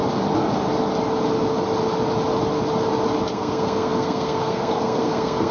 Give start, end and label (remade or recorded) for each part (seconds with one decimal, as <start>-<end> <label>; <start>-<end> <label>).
0.0-3.3 recorded; 3.3-5.5 remade